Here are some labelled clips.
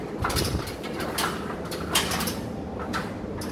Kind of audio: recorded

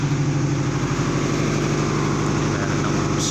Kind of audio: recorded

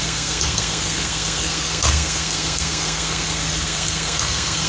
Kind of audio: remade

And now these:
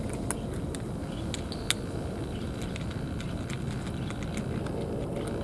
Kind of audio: recorded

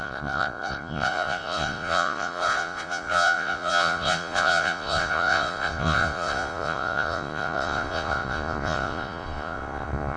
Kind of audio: remade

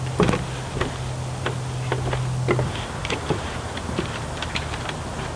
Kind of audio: recorded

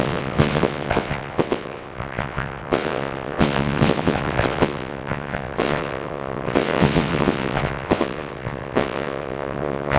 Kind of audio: remade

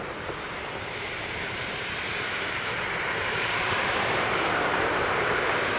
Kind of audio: remade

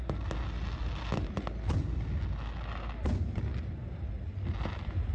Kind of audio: recorded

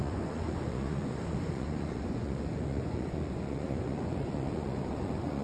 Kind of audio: remade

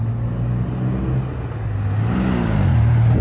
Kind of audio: recorded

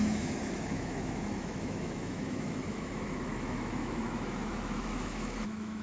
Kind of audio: remade